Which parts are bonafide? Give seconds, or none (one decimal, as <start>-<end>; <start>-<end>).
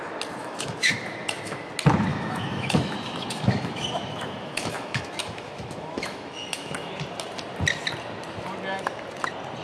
0.0-0.4; 1.7-2.1; 6.9-9.6